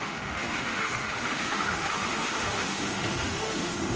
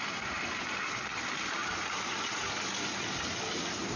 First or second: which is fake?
first